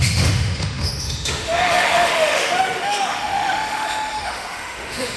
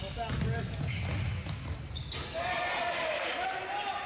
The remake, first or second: first